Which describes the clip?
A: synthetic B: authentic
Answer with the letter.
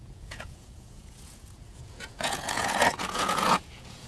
A